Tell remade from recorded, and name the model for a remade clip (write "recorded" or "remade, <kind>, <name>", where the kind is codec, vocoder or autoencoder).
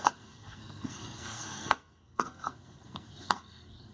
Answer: remade, codec, SNAC